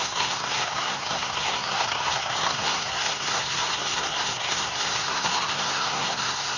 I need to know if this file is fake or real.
fake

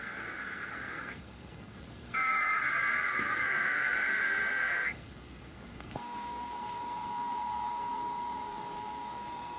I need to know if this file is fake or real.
fake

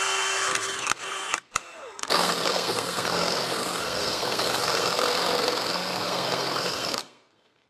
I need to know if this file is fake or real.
fake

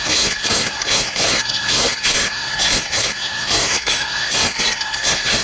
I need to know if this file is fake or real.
fake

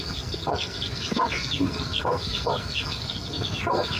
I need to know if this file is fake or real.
fake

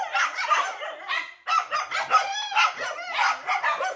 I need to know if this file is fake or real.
real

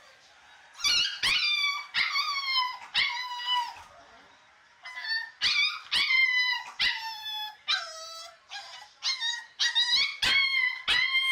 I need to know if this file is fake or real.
real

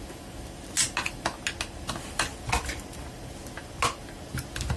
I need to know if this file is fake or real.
real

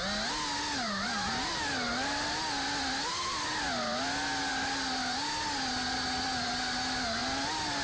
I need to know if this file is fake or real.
real